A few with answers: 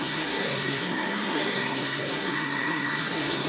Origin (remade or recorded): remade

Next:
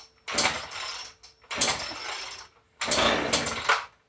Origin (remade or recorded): recorded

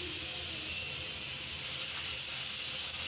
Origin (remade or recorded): recorded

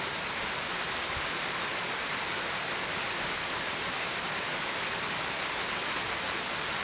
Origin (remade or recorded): remade